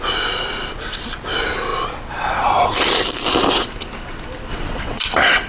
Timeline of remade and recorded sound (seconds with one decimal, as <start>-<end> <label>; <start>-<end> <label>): 0.0-4.5 recorded; 4.5-5.0 remade; 5.0-5.5 recorded